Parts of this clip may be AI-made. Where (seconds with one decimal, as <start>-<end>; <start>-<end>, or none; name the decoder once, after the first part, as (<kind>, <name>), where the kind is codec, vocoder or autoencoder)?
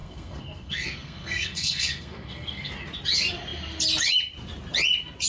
0.0-2.7 (codec, SNAC)